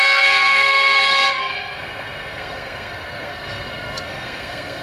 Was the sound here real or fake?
fake